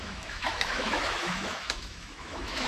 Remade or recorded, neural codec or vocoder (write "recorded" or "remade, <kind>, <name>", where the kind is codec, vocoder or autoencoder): remade, autoencoder, DAC-VAE